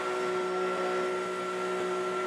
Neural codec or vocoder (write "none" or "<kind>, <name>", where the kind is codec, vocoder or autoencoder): none